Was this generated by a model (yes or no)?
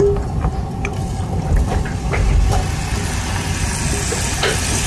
no